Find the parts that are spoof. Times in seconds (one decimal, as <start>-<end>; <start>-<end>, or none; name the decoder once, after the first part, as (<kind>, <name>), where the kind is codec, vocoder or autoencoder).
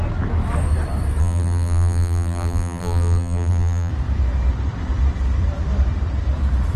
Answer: 1.2-3.9 (vocoder, BigVGAN v2)